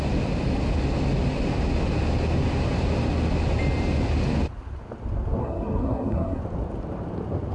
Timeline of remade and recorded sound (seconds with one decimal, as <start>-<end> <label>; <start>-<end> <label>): 0.0-5.4 recorded; 5.4-6.4 remade; 6.4-7.5 recorded